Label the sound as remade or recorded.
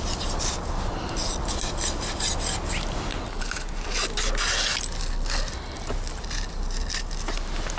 recorded